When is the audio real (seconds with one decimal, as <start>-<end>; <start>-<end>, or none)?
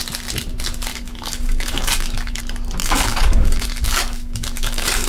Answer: 0.0-0.9; 2.4-2.8